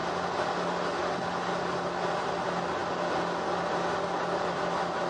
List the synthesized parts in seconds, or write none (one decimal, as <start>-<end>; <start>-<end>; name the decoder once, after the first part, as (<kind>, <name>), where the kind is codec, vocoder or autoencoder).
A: none

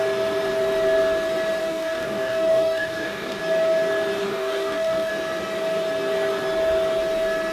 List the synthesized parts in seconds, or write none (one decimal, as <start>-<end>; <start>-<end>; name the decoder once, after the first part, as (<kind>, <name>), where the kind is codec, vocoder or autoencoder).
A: 1.6-3.4 (codec, DAC); 4.2-5.1

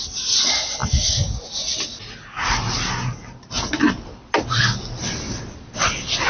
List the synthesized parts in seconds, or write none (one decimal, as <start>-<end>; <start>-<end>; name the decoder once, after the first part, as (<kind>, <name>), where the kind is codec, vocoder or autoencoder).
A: none

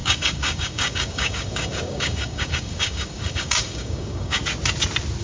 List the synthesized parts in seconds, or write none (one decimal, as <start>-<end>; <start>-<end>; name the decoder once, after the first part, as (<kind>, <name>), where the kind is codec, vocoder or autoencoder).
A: 0.0-4.4 (codec, DAC)